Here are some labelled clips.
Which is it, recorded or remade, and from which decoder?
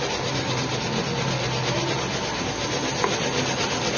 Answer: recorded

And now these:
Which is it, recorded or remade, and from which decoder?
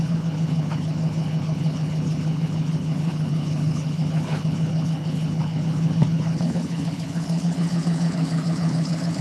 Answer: remade, codec, HILCodec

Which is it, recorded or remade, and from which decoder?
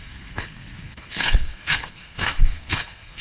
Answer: remade, codec, SNAC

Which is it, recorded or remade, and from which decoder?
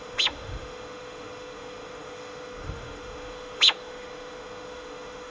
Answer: remade, autoencoder, DAC-VAE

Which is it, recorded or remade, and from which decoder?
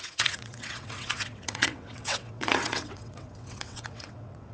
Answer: remade, vocoder, WaveNeXt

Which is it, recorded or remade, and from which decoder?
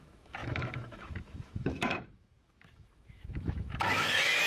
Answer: remade, autoencoder, DAC-VAE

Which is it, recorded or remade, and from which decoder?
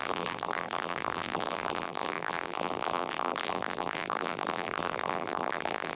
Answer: remade, vocoder, BigVGAN v2